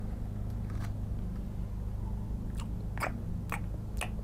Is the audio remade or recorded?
recorded